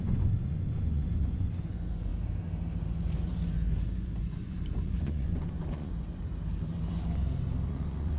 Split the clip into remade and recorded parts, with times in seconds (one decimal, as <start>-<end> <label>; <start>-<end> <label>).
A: 0.0-2.1 remade; 2.1-2.8 recorded; 2.8-6.3 remade; 6.3-7.7 recorded; 7.7-8.2 remade